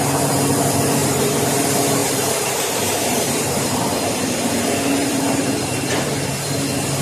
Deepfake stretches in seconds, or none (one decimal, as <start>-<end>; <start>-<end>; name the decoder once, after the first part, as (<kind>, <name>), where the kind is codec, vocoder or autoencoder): 1.0-1.6 (vocoder, BigVGAN v2); 2.0-4.3; 5.0-6.3